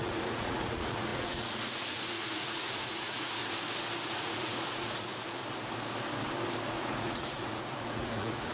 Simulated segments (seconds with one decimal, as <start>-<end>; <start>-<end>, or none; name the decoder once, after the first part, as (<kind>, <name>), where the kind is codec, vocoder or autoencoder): 0.0-3.4 (vocoder, Vocos); 4.1-5.1; 6.7-8.5